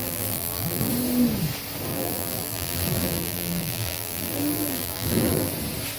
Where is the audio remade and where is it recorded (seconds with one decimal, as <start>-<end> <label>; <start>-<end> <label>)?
0.0-0.9 remade; 0.9-1.9 recorded; 1.9-5.5 remade; 5.5-6.0 recorded